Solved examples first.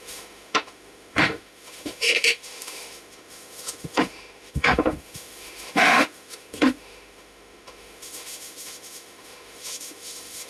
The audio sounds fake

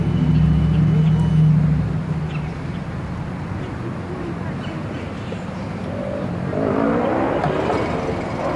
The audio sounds real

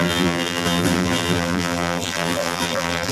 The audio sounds fake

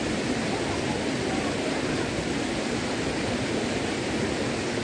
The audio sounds real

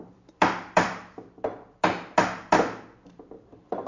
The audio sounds fake